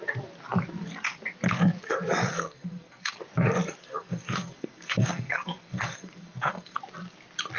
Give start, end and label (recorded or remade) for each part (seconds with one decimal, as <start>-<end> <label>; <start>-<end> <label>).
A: 0.0-2.3 recorded; 2.3-3.1 remade; 3.1-3.8 recorded; 3.8-6.8 remade; 6.8-7.6 recorded